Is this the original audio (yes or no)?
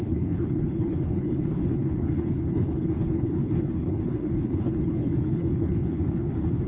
no